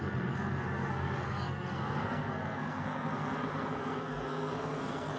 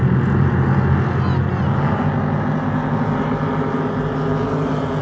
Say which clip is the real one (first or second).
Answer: second